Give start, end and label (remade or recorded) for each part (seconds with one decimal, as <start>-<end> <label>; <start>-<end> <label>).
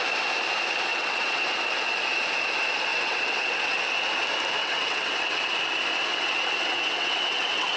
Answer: 0.0-0.9 recorded; 0.9-1.5 remade; 1.5-2.9 recorded; 2.9-3.8 remade; 3.8-4.6 recorded; 4.6-5.4 remade; 5.4-6.1 recorded; 6.1-7.8 remade